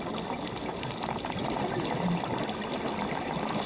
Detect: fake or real real